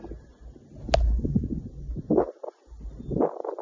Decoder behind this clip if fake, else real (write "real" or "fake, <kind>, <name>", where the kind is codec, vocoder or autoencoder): real